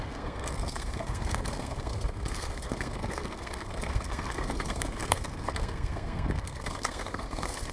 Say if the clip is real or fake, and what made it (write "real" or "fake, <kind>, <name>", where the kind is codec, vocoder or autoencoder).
fake, codec, SNAC